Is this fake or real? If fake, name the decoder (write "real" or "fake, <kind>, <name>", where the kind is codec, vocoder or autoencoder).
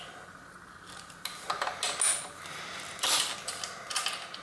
real